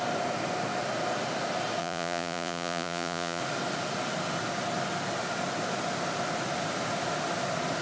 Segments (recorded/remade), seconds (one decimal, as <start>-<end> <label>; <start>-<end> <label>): 0.0-1.8 recorded; 1.8-3.4 remade; 3.4-7.8 recorded